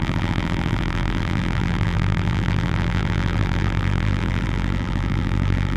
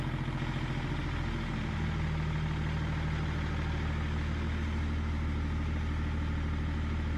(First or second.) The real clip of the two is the second